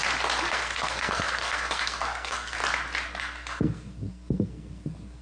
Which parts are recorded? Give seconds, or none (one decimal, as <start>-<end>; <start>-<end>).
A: 0.0-0.5; 2.6-3.2